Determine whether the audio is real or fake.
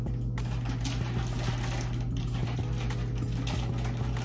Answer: real